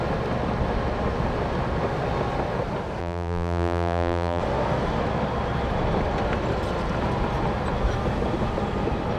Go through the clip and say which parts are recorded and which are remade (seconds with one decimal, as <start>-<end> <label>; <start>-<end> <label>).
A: 0.0-3.0 recorded; 3.0-4.4 remade; 4.4-9.2 recorded